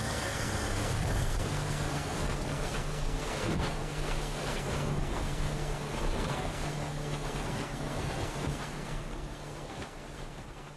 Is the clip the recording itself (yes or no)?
no